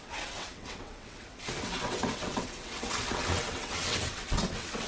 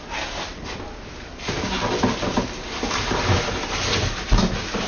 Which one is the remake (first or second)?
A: first